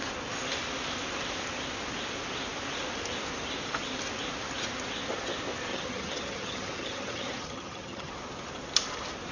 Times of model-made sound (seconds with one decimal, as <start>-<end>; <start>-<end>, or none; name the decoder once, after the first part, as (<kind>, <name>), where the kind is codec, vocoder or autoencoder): 5.7-8.1 (vocoder, HiFi-GAN)